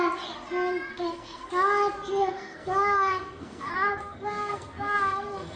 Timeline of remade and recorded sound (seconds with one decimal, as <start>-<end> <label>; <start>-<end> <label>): 0.0-0.9 recorded; 0.9-1.5 remade; 1.5-2.2 recorded; 2.2-5.6 remade